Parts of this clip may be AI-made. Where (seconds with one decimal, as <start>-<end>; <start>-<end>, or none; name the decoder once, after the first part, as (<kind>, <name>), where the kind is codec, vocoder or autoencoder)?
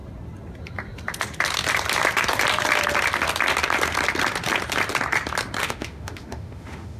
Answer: 5.6-7.0 (autoencoder, DAC-VAE)